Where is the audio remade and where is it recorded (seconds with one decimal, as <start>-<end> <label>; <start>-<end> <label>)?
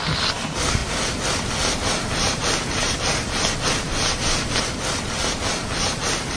0.0-6.4 recorded